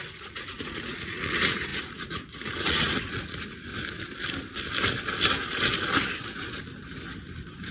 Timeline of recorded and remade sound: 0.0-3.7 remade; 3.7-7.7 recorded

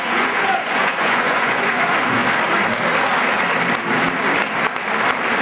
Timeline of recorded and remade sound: 0.0-2.2 remade; 2.2-5.4 recorded

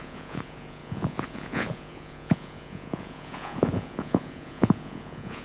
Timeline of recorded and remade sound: 0.0-5.4 remade

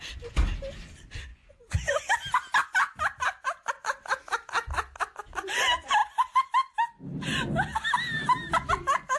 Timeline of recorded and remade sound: 0.0-1.3 recorded; 1.3-2.0 remade; 2.0-9.2 recorded

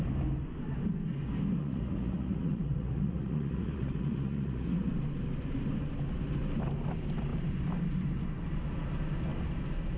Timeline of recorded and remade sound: 0.0-1.6 recorded; 1.6-4.9 remade; 4.9-10.0 recorded

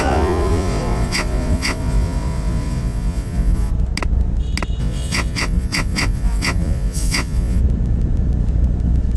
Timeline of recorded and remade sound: 0.0-3.7 remade; 3.7-4.8 recorded; 4.8-7.6 remade; 7.6-9.2 recorded

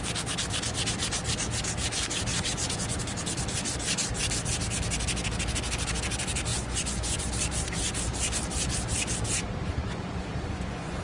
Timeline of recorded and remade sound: 0.0-2.3 recorded; 2.3-3.0 remade; 3.0-6.5 recorded; 6.5-7.3 remade; 7.3-9.8 recorded; 9.8-11.0 remade

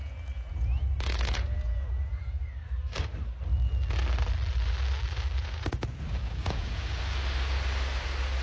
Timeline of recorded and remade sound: 0.0-2.4 remade; 2.4-5.4 recorded; 5.4-7.0 remade; 7.0-8.4 recorded